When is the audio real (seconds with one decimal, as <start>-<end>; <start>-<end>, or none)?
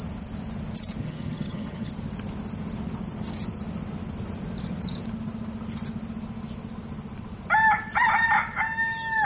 0.0-1.0; 1.9-9.3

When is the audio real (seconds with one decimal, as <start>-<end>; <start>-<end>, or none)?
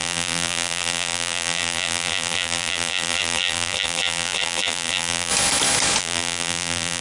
5.3-6.0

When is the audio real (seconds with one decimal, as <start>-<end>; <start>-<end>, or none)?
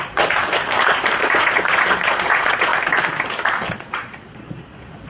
0.5-1.2; 2.7-3.7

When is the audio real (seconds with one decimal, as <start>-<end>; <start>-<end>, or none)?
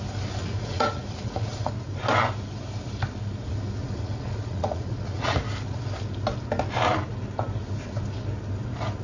0.0-0.4; 1.7-3.8; 5.4-9.0